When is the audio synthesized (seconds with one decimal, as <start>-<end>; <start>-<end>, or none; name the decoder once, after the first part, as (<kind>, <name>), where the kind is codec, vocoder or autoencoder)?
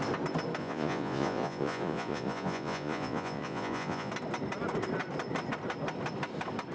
0.6-4.1 (vocoder, Vocos)